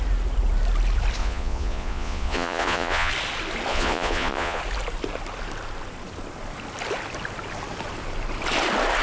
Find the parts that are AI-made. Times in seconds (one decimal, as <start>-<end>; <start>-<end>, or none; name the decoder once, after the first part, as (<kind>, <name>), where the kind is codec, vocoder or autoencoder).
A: 1.2-3.1 (vocoder, Vocos); 3.7-4.6